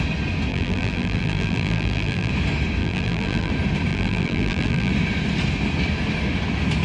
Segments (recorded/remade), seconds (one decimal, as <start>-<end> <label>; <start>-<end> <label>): 0.0-0.5 recorded; 0.5-2.3 remade; 2.3-2.8 recorded; 2.8-3.5 remade; 3.5-3.9 recorded; 3.9-4.9 remade; 4.9-6.8 recorded